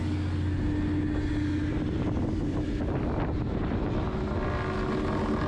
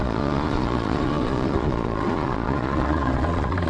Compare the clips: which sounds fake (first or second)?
second